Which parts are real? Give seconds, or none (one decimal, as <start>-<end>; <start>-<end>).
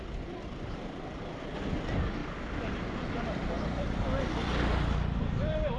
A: 0.0-5.8